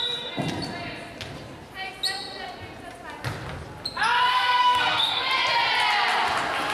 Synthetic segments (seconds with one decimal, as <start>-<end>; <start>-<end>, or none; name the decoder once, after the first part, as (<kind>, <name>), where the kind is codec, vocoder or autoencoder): 4.3-5.3 (codec, SNAC)